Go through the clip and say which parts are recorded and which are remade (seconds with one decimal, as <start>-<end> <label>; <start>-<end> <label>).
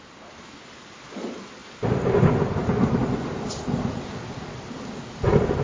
0.0-5.6 recorded